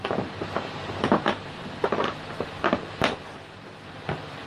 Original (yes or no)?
no